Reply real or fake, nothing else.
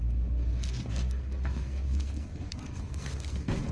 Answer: fake